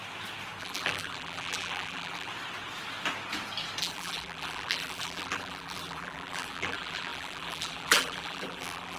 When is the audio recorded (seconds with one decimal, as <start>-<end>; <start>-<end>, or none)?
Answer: 0.0-0.6; 2.3-3.8

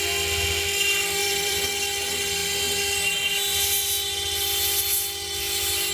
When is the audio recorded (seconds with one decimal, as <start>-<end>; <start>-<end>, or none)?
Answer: 0.0-1.2; 1.7-5.9

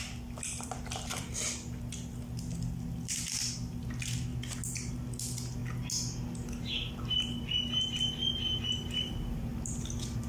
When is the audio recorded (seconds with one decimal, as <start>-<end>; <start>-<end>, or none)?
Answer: 4.3-4.9; 5.6-6.9

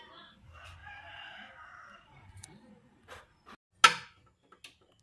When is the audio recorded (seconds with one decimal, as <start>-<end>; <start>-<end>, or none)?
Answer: 0.0-0.8; 3.2-5.0

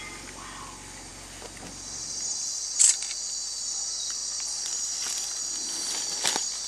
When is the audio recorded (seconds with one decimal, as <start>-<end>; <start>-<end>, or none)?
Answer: 0.0-4.2; 5.1-6.7

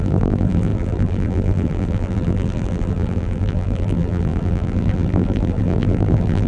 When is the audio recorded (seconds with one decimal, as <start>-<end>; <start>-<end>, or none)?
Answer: none

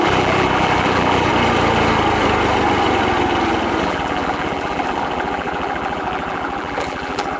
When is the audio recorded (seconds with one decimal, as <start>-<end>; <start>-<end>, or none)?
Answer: 1.3-3.8

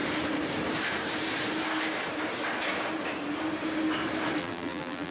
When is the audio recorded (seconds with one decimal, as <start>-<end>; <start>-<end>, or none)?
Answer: 0.0-4.4